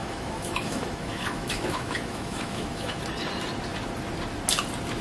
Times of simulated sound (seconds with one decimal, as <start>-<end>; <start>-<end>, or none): 0.0-3.0